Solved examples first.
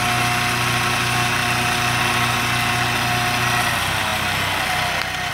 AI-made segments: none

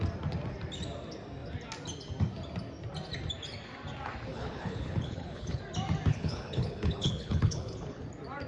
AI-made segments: 4.3-5.6 (codec, HILCodec); 6.1-8.0

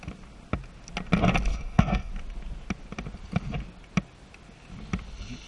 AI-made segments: 1.5-2.1 (codec, SNAC)

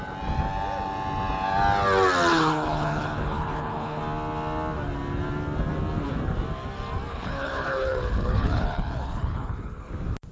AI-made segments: 2.3-4.0 (codec, HILCodec); 7.1-9.9

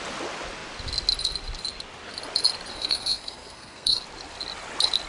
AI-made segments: 2.7-4.0 (codec, SNAC)

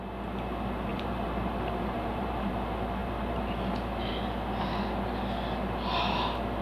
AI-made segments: 0.9-2.5 (vocoder, BigVGAN v2); 3.0-4.1

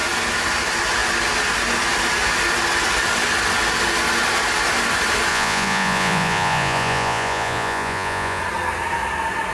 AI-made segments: 5.3-8.4 (vocoder, Vocos)